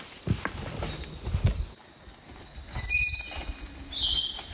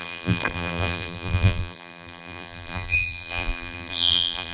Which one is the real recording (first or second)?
first